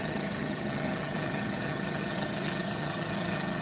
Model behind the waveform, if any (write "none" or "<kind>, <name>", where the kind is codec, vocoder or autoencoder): vocoder, HiFi-GAN